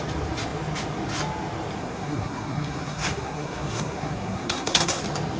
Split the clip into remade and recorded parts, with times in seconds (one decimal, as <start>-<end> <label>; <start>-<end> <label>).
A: 0.0-1.8 recorded; 1.8-5.0 remade; 5.0-5.4 recorded